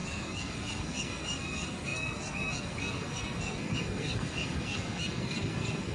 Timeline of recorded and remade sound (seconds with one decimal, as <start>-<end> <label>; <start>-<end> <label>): 0.0-5.9 remade